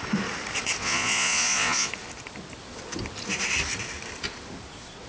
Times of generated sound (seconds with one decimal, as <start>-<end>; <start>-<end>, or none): 0.8-1.9